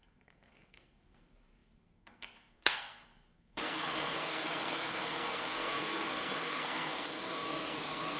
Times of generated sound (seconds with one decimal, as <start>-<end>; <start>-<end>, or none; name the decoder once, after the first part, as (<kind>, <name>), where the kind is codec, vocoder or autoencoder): 0.0-8.2 (codec, SNAC)